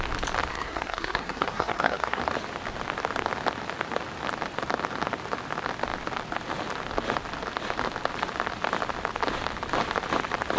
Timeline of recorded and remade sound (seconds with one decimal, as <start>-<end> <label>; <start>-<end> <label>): 0.0-0.5 recorded; 0.5-2.2 remade; 2.2-10.6 recorded